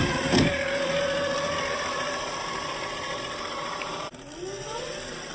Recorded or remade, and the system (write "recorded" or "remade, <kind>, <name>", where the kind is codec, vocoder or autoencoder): recorded